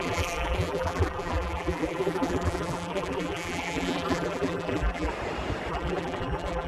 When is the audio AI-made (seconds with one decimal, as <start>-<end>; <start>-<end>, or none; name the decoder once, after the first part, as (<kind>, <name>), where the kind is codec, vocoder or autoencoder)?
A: 0.0-5.1 (vocoder, BigVGAN v2); 5.7-6.7